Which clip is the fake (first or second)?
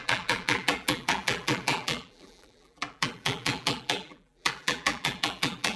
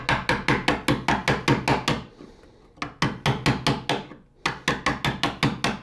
first